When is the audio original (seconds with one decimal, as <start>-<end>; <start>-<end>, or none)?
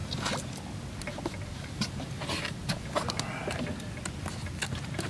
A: 0.0-5.1